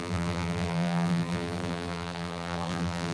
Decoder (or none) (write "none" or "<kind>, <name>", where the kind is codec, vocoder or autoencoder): vocoder, BigVGAN v2